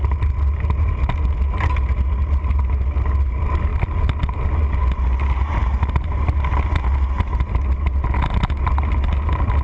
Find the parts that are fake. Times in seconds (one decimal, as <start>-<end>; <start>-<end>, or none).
none